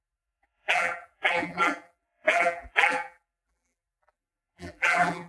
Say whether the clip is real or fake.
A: fake